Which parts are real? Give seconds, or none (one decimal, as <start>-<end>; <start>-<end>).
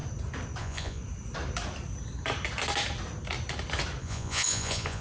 0.0-0.6; 1.0-4.0